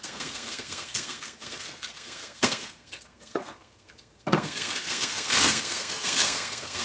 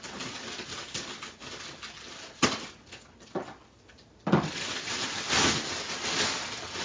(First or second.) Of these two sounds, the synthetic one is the first